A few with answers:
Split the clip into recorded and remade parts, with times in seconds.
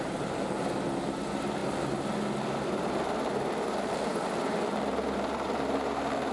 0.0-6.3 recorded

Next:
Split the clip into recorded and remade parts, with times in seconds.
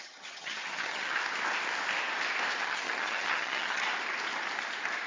0.0-1.2 remade; 1.2-2.6 recorded; 2.6-3.8 remade; 3.8-5.1 recorded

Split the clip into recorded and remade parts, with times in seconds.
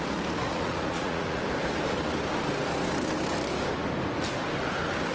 0.0-0.4 recorded; 0.4-1.4 remade; 1.4-5.1 recorded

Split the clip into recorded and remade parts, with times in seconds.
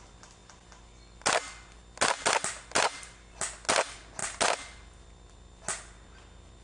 0.0-6.6 recorded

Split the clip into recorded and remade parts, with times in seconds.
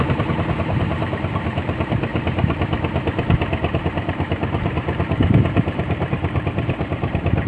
0.0-2.1 remade; 2.1-3.7 recorded; 3.7-7.5 remade